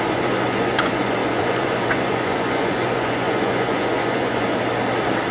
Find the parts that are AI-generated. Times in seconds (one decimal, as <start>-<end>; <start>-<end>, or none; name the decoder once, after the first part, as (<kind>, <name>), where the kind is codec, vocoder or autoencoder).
0.0-4.5 (vocoder, Vocos)